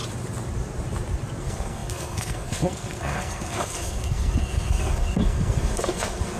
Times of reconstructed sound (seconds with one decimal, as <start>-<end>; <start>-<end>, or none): 1.4-6.4